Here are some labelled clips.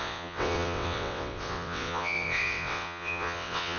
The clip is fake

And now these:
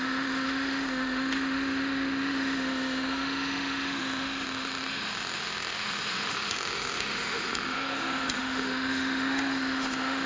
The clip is fake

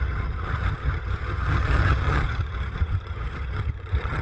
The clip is fake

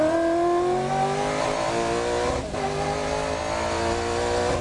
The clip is real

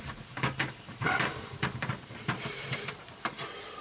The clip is fake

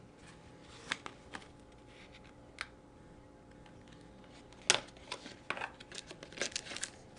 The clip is real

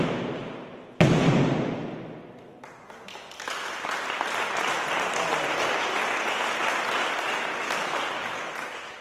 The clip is real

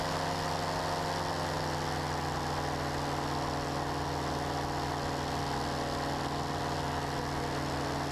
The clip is real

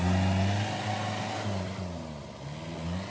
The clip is real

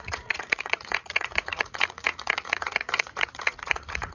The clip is fake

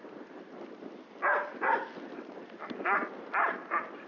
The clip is real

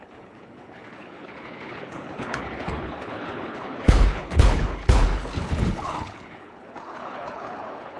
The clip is fake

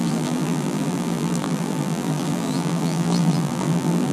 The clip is fake